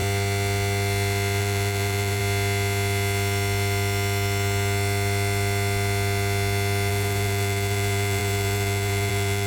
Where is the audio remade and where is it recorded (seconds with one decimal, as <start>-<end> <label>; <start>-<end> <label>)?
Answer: 0.0-1.4 recorded; 1.4-2.2 remade; 2.2-6.9 recorded; 6.9-9.5 remade